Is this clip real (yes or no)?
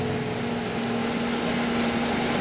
yes